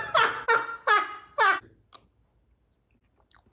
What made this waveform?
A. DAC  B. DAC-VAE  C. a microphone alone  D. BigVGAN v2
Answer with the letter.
C